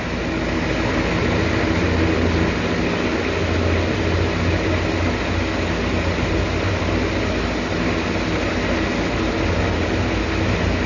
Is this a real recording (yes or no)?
yes